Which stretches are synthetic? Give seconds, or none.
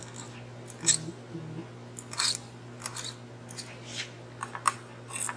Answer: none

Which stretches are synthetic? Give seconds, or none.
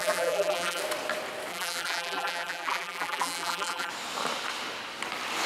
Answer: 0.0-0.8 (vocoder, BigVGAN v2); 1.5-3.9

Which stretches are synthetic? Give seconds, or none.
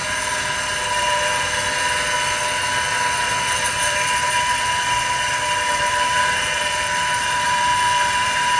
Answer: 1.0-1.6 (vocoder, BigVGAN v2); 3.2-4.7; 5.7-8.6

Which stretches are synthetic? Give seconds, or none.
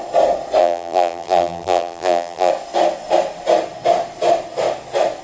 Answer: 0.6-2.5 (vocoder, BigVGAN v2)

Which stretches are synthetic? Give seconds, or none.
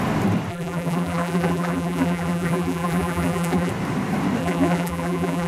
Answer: 0.5-3.7 (vocoder, BigVGAN v2); 4.4-5.5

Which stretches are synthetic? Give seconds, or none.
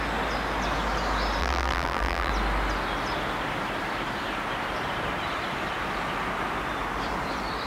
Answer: 1.4-2.3 (vocoder, BigVGAN v2)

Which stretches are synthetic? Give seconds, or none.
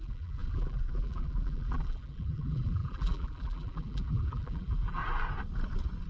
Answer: 0.0-5.0 (vocoder, BigVGAN v2)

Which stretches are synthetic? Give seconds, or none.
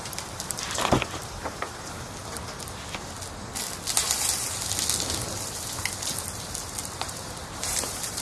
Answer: 0.0-2.2 (vocoder, BigVGAN v2); 7.0-8.2